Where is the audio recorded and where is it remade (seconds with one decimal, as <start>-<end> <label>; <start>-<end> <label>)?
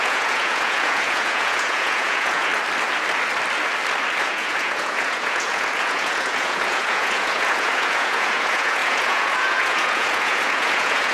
0.0-2.5 remade; 2.5-4.2 recorded; 4.2-11.1 remade